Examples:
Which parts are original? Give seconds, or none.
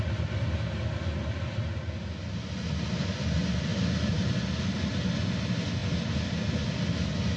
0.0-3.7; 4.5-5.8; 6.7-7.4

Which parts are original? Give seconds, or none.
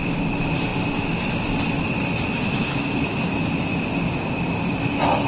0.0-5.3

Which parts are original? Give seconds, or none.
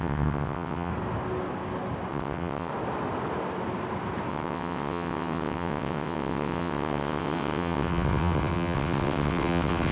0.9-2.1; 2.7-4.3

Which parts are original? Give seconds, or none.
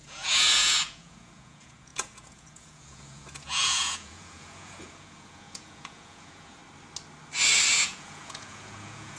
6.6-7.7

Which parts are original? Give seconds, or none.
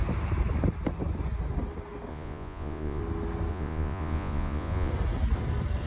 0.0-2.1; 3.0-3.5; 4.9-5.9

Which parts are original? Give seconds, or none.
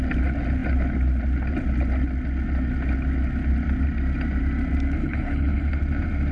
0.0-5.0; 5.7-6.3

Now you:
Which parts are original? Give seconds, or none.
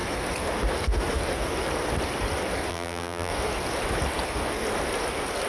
0.0-2.7; 3.3-5.5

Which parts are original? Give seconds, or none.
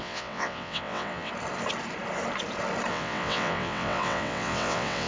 1.3-2.9